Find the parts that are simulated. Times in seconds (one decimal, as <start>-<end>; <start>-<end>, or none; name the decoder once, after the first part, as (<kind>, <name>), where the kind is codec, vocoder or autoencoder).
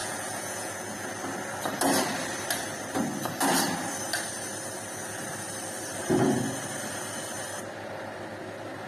0.0-1.1 (vocoder, Vocos)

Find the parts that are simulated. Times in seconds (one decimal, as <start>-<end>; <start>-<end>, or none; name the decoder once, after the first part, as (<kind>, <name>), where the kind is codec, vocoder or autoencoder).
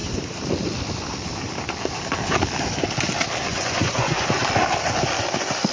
3.5-4.4 (vocoder, Vocos)